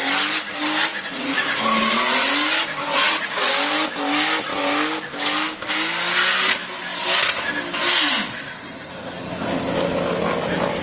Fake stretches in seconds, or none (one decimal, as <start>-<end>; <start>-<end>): 0.9-1.6; 2.9-3.5